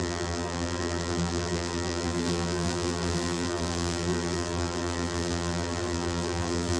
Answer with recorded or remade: remade